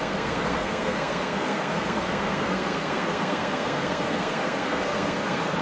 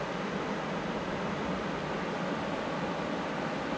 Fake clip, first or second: first